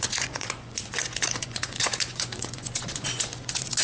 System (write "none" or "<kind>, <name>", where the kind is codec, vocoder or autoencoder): vocoder, Vocos